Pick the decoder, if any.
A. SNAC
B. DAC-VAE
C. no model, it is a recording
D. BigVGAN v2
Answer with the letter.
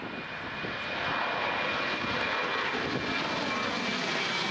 C